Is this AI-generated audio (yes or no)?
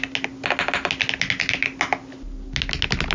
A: no